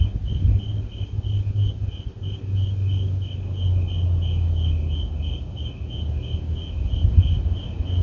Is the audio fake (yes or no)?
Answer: no